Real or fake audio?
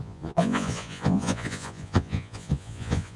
fake